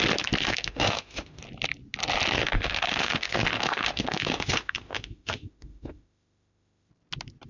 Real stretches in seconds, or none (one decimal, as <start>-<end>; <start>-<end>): 0.0-0.5; 1.4-2.4; 6.9-7.5